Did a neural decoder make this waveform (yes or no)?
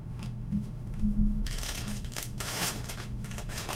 yes